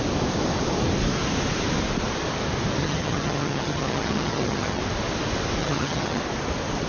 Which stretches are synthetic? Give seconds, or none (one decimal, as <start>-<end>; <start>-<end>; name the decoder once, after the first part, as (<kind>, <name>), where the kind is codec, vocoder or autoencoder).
2.8-4.8 (vocoder, HiFi-GAN); 5.6-6.2